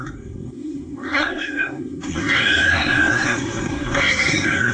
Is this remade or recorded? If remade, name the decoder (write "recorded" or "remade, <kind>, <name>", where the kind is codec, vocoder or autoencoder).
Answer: remade, codec, SNAC